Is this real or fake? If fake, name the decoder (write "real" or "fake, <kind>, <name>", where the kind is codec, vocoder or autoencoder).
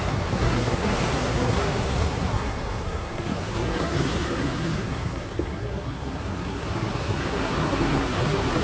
fake, codec, SNAC